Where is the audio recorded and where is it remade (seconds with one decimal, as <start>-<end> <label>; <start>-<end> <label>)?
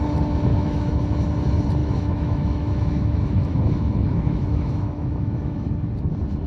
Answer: 0.0-0.5 recorded; 0.5-1.0 remade; 1.0-1.8 recorded; 1.8-5.7 remade; 5.7-6.5 recorded